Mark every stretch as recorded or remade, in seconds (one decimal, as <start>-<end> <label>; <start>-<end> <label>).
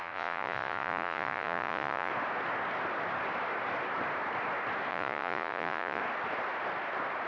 0.0-2.1 remade; 2.1-4.9 recorded; 4.9-6.0 remade; 6.0-7.3 recorded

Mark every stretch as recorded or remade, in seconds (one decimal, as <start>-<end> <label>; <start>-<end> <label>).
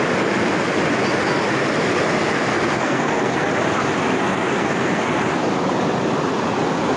0.0-2.5 recorded; 2.5-3.5 remade; 3.5-4.2 recorded; 4.2-5.1 remade; 5.1-7.0 recorded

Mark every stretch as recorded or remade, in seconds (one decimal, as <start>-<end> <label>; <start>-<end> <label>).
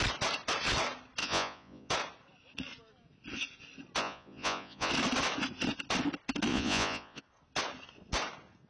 0.0-1.2 recorded; 1.2-1.9 remade; 1.9-4.0 recorded; 4.0-4.9 remade; 4.9-6.5 recorded; 6.5-7.2 remade; 7.2-8.7 recorded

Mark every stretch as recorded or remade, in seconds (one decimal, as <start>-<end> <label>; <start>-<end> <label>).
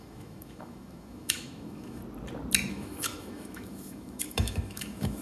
0.0-2.0 remade; 2.0-2.7 recorded; 2.7-5.2 remade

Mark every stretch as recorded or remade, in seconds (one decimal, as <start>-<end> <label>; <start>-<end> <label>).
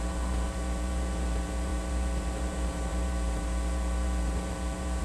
0.0-5.0 remade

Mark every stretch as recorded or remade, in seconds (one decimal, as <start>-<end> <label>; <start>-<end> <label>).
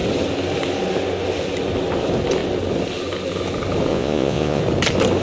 0.0-3.9 recorded; 3.9-4.6 remade; 4.6-5.2 recorded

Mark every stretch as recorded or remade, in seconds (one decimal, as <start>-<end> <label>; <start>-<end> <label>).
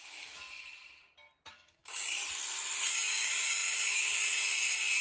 0.0-0.4 remade; 0.4-1.5 recorded; 1.5-2.2 remade; 2.2-2.9 recorded; 2.9-5.0 remade